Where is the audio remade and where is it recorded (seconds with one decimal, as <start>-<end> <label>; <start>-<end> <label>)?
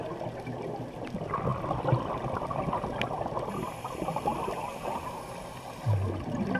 0.0-6.6 recorded